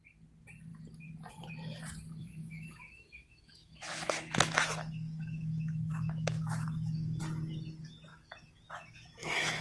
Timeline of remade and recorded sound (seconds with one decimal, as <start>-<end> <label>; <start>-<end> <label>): 0.0-2.2 recorded; 2.2-7.2 remade; 7.2-8.1 recorded; 8.1-9.6 remade